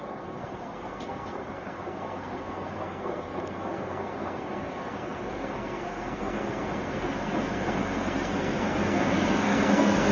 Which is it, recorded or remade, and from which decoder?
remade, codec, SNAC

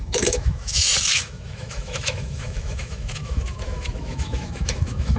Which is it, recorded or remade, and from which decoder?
remade, autoencoder, DAC-VAE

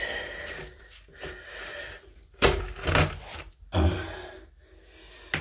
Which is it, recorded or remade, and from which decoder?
recorded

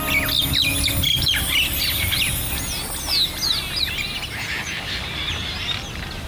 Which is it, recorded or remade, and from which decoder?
recorded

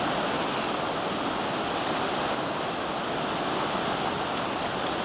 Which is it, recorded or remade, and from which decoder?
recorded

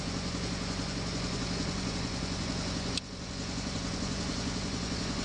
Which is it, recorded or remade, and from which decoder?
remade, vocoder, Vocos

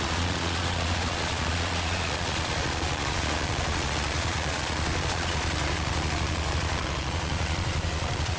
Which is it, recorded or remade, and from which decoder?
remade, vocoder, Vocos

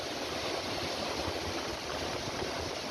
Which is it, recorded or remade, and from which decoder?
recorded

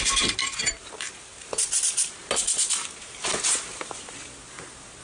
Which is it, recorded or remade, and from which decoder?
recorded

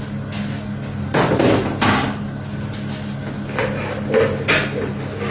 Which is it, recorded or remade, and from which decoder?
recorded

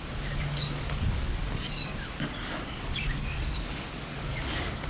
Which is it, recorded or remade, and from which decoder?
remade, codec, DAC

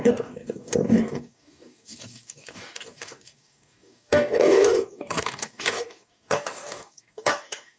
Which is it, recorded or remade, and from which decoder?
remade, codec, DAC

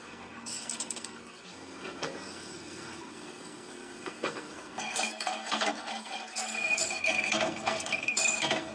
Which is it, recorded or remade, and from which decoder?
remade, codec, SNAC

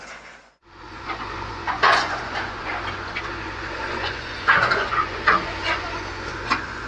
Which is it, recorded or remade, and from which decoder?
remade, vocoder, Vocos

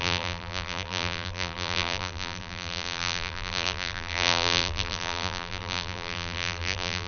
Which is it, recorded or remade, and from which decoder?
remade, vocoder, BigVGAN v2